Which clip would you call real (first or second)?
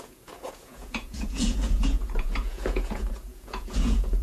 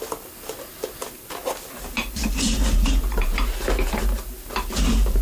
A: second